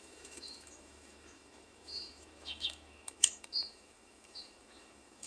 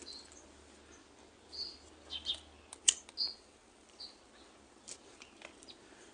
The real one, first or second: second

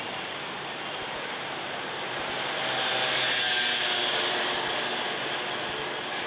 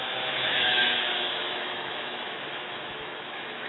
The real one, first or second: first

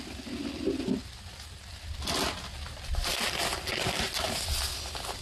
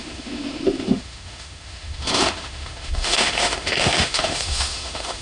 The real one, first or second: first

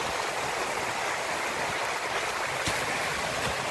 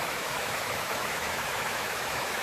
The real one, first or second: first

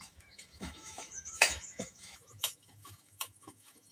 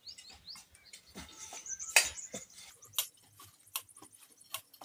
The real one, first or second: second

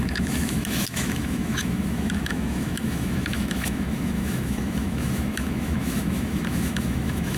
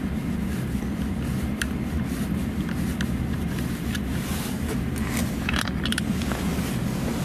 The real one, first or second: second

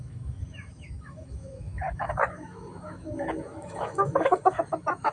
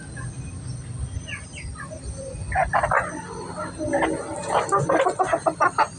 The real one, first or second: second